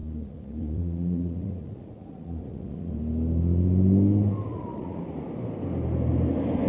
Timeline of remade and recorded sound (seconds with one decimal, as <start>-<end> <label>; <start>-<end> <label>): 0.0-2.9 remade; 2.9-4.5 recorded; 4.5-5.0 remade; 5.0-6.7 recorded